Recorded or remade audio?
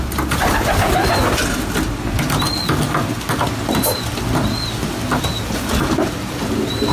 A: recorded